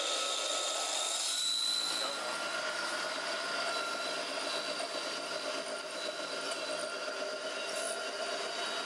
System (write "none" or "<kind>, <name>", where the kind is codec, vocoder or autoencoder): none